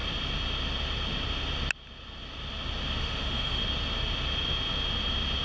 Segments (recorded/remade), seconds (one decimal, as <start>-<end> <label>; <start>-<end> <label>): 0.0-3.0 recorded; 3.0-3.6 remade; 3.6-5.4 recorded